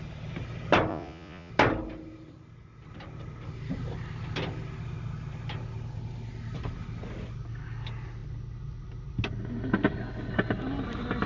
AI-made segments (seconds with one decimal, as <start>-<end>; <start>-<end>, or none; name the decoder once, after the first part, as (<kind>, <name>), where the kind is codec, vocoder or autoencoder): 0.9-1.5 (vocoder, Vocos)